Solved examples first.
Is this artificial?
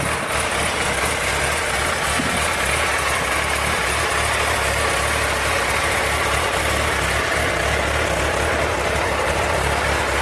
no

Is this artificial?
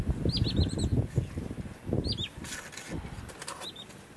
no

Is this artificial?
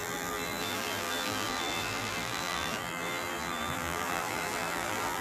yes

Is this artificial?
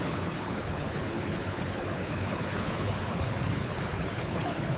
yes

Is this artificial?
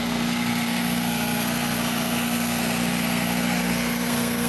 yes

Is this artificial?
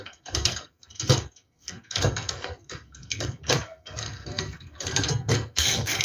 yes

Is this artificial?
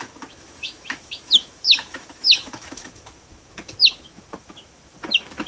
yes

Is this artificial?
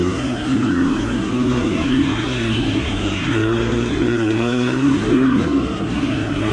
yes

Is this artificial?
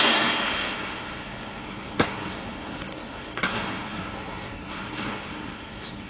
yes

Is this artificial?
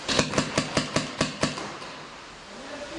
no